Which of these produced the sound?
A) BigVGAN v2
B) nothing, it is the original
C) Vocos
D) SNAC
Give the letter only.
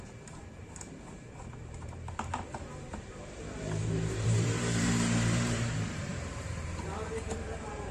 A